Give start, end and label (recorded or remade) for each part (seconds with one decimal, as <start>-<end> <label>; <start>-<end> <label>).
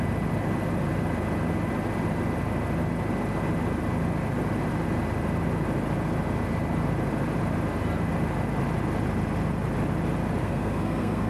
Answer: 0.0-10.4 recorded; 10.4-11.3 remade